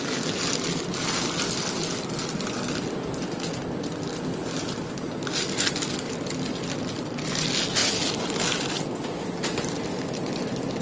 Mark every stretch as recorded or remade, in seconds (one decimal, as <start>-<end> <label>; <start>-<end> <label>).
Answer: 0.0-10.8 recorded